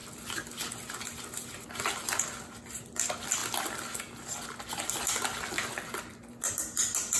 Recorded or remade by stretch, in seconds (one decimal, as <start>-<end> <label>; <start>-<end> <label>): 0.0-7.2 recorded